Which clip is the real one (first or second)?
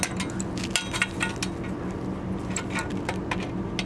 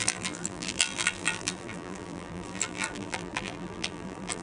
first